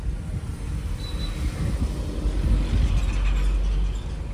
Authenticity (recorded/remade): recorded